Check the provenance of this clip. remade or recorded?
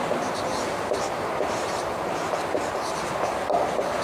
recorded